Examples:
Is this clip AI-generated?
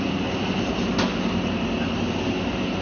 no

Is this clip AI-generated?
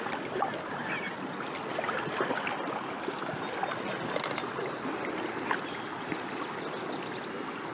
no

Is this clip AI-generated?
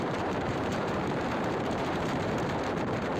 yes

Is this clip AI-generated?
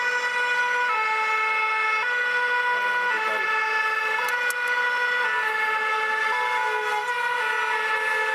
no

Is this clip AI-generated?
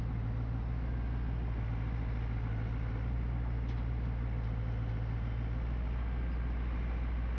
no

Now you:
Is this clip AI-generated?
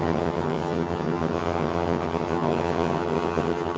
yes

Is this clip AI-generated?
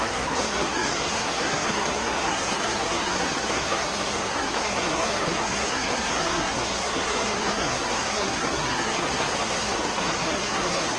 yes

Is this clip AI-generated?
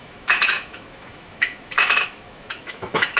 yes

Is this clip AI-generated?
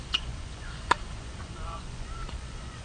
yes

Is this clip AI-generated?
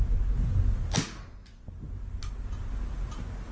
no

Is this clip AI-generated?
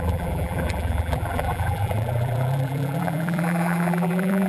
yes